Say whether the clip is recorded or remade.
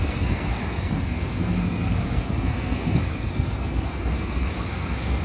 remade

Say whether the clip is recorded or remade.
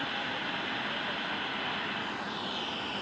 recorded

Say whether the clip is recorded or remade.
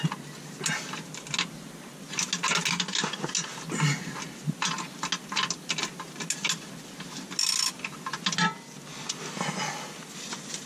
recorded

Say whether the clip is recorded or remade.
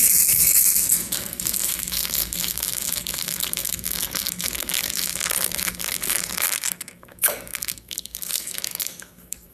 remade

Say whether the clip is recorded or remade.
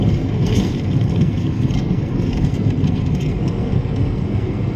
remade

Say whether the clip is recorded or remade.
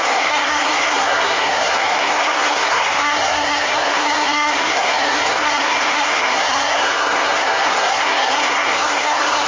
remade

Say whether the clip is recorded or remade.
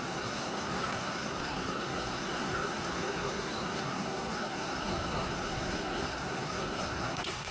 remade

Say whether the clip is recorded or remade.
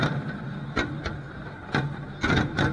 recorded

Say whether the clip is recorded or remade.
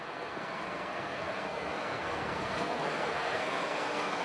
remade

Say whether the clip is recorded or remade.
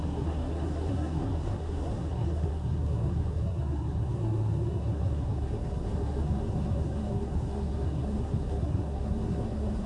remade